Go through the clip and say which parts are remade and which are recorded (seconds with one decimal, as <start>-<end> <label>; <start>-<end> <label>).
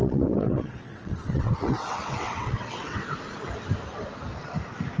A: 0.0-3.0 remade; 3.0-5.0 recorded